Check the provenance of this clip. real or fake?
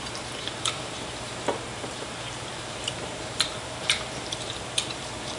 fake